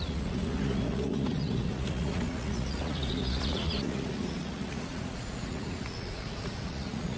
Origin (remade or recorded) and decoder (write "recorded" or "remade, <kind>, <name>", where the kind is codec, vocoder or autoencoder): remade, vocoder, Vocos